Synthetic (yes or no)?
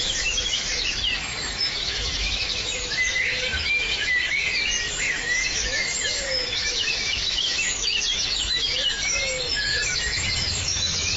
yes